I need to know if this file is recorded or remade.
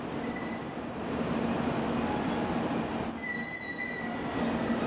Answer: recorded